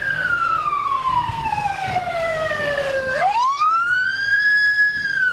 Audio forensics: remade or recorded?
remade